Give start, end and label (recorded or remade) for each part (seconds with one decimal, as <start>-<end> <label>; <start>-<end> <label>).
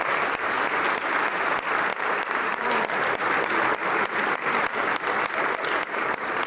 0.0-1.9 recorded; 1.9-3.2 remade; 3.2-6.5 recorded